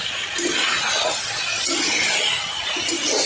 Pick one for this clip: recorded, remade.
recorded